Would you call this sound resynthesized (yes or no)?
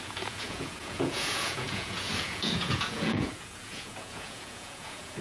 yes